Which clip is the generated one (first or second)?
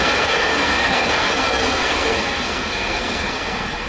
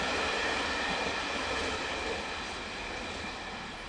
first